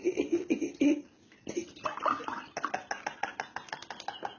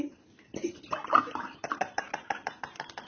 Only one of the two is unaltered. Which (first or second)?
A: first